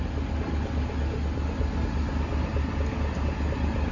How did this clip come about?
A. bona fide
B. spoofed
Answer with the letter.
A